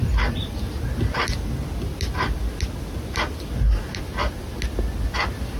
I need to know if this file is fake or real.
real